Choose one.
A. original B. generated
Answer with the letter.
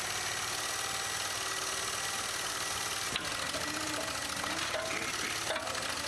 A